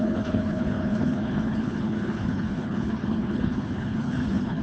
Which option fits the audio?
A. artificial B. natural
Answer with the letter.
A